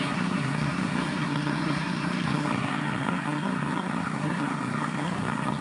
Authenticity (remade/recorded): remade